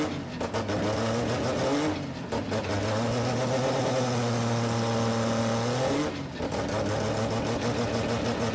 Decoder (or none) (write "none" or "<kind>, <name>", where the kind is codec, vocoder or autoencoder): none